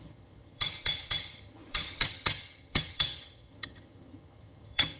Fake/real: fake